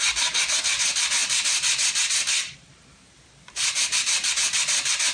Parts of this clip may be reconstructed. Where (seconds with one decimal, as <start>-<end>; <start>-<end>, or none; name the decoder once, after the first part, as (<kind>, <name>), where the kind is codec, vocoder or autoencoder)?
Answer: none